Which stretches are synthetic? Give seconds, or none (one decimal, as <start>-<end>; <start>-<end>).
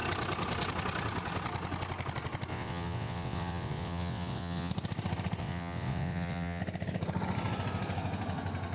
2.5-4.7; 5.4-6.6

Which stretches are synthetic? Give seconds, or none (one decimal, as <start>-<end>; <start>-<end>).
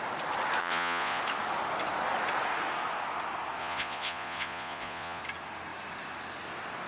0.6-1.2; 3.6-5.2